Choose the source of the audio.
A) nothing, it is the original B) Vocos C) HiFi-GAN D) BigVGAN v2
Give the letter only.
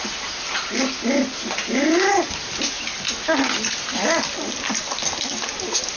A